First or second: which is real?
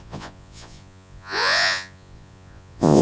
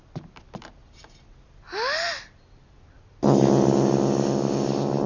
second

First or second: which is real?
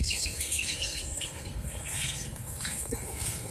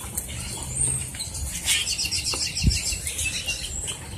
second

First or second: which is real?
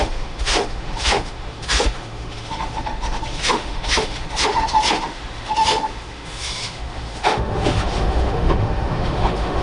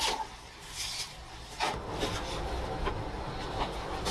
second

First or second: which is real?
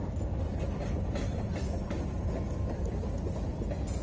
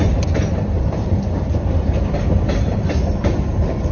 first